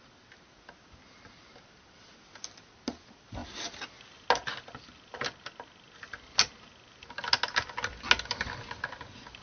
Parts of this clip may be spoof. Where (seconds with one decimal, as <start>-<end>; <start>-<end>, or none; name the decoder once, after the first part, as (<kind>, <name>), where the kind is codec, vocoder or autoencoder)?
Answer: none